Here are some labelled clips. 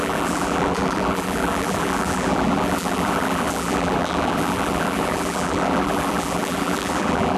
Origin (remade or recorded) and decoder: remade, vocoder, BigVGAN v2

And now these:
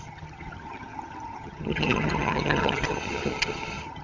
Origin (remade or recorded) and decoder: remade, vocoder, HiFi-GAN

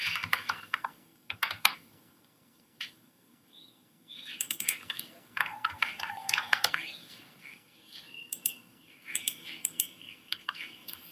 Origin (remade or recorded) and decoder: remade, codec, SNAC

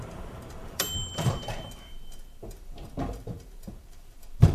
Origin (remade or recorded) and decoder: remade, vocoder, BigVGAN v2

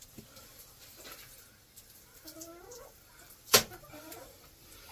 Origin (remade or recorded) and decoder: recorded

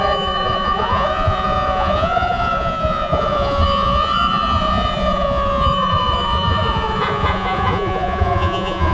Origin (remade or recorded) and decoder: remade, vocoder, Vocos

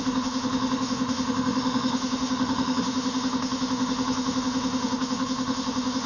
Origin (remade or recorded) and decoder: remade, autoencoder, DAC-VAE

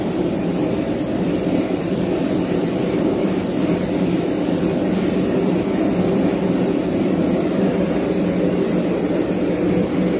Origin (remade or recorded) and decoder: remade, vocoder, BigVGAN v2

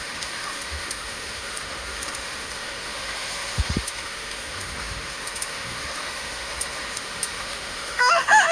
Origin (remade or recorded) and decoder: remade, autoencoder, DAC-VAE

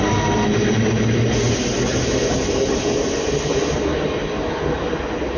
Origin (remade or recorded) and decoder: recorded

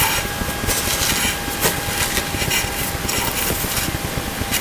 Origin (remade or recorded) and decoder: recorded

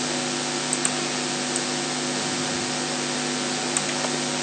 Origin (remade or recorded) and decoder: recorded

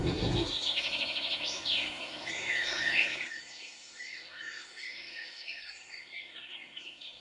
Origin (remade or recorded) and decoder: remade, codec, SNAC